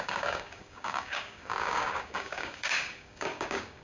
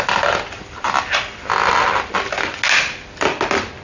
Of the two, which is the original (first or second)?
second